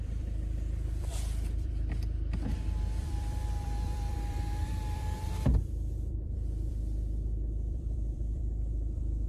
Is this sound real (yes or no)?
no